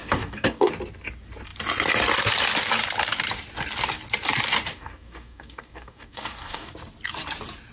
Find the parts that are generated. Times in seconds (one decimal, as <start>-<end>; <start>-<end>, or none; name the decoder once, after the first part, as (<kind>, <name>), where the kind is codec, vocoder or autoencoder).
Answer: 0.0-0.7 (codec, DAC); 4.7-6.7